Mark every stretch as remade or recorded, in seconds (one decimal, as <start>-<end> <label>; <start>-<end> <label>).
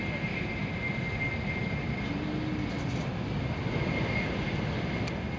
0.0-5.4 recorded